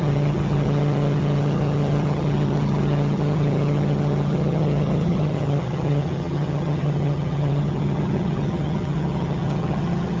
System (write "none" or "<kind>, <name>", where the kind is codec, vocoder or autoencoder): vocoder, HiFi-GAN